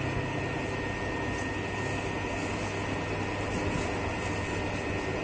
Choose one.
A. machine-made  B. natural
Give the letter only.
B